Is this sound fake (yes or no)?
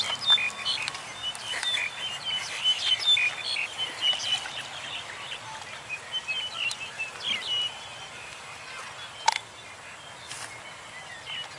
no